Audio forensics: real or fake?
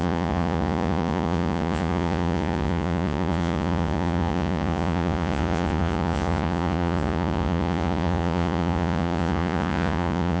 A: fake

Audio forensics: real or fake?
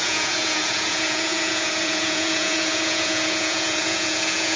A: fake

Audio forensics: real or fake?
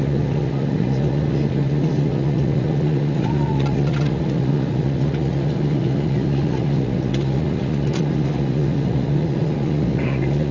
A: fake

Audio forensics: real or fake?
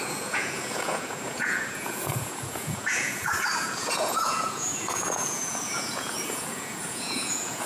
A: fake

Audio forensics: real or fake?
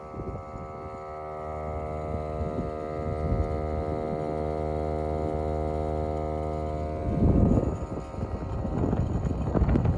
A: real